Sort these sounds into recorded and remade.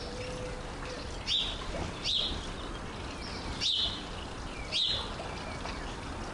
recorded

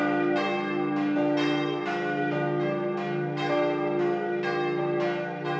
recorded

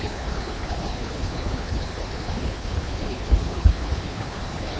remade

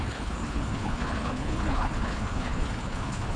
remade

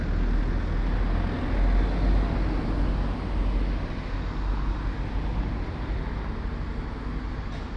recorded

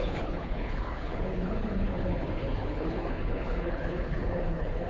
remade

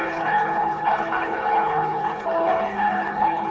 remade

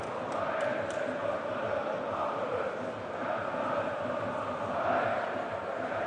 recorded